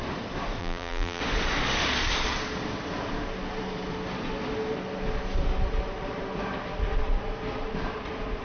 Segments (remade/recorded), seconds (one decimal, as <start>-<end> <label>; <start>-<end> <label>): 0.0-0.6 recorded; 0.6-1.2 remade; 1.2-8.4 recorded